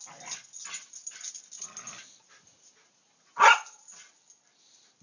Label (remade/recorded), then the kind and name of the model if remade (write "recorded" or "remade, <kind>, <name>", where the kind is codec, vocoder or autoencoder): recorded